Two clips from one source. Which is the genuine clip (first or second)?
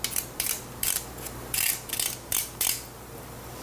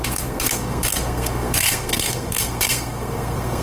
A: first